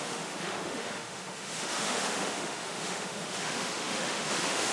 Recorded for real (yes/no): no